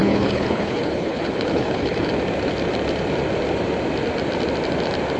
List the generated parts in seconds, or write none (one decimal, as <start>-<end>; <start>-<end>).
0.0-2.1